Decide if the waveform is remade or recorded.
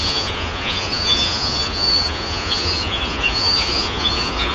remade